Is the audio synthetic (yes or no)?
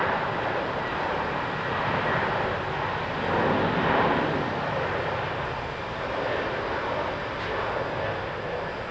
no